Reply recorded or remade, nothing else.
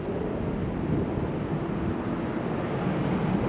recorded